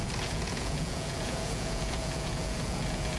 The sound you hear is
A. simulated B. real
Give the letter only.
A